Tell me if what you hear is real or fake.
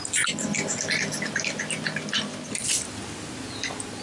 real